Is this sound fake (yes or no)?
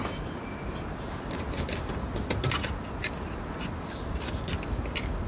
no